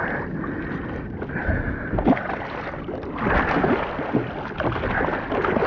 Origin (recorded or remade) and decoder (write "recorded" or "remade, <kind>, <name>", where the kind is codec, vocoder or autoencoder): recorded